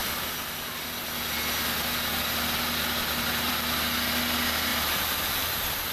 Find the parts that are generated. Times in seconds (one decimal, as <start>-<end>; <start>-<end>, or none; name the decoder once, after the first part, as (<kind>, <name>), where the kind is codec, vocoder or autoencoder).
4.7-5.9 (vocoder, BigVGAN v2)